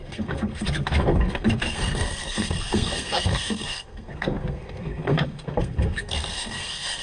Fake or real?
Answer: fake